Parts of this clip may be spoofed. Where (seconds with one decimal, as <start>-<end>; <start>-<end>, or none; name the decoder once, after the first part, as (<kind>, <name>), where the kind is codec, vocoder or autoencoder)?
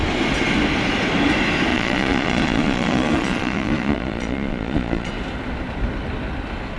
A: 1.7-5.1 (vocoder, Vocos)